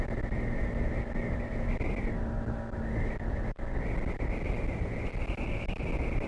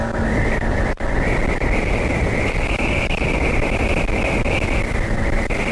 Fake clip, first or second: second